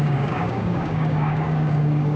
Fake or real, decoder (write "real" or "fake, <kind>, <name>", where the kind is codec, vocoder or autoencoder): fake, codec, DAC